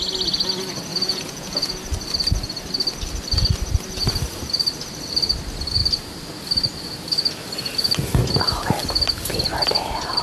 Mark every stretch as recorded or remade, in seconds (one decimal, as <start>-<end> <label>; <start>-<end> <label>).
0.0-0.9 recorded; 0.9-1.7 remade; 1.7-10.2 recorded